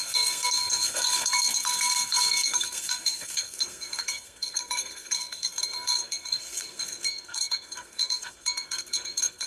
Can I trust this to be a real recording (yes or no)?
no